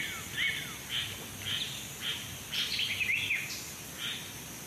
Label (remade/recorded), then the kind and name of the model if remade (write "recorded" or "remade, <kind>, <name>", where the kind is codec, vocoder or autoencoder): recorded